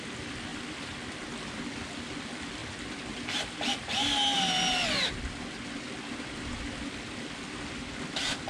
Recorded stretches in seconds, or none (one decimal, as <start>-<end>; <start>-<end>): 0.0-8.5